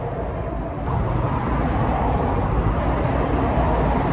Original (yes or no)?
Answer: yes